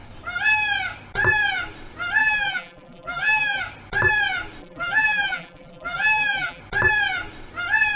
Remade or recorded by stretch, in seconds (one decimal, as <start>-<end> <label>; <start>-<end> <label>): 0.0-2.2 recorded; 2.2-3.6 remade; 3.6-4.6 recorded; 4.6-6.6 remade; 6.6-8.0 recorded